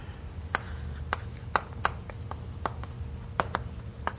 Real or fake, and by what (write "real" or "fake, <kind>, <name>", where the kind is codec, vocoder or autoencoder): real